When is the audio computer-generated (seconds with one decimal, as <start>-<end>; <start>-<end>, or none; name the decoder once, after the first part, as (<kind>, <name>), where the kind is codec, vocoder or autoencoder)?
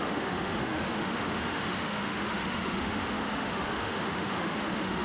0.0-5.0 (autoencoder, DAC-VAE)